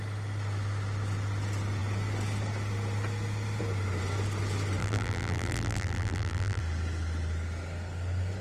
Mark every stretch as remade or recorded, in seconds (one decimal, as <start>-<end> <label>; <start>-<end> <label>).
0.0-4.8 recorded; 4.8-6.6 remade; 6.6-8.4 recorded